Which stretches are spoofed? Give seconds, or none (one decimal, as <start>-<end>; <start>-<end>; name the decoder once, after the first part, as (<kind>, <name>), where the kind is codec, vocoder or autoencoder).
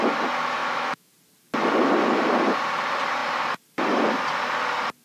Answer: 0.6-1.1 (autoencoder, DAC-VAE)